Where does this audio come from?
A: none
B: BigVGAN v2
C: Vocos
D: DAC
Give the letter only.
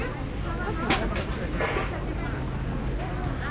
A